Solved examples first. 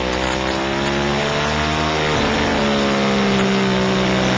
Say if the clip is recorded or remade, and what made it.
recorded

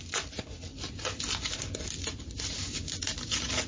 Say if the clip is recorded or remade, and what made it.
recorded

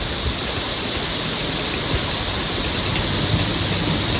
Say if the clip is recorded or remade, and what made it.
recorded